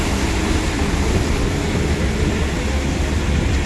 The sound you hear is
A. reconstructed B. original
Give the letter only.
B